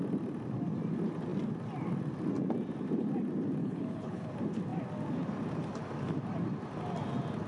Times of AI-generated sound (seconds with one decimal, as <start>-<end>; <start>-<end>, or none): 3.6-4.3